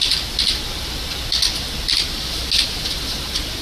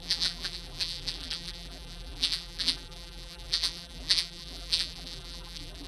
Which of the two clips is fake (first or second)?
second